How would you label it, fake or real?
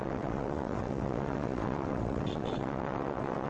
fake